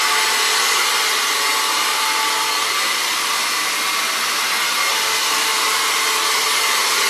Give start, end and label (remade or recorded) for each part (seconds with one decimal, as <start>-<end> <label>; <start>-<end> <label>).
0.0-7.1 recorded